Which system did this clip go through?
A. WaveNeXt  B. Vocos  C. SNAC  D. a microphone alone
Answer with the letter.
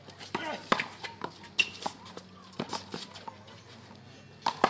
D